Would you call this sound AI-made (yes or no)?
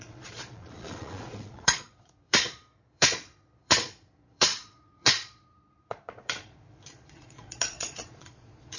yes